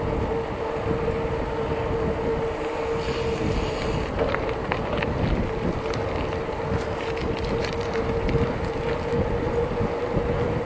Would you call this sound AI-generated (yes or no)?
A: no